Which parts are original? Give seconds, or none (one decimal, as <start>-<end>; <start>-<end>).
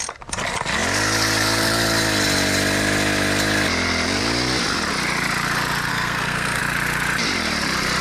0.0-5.9; 6.6-8.0